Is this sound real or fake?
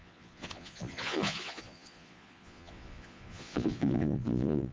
fake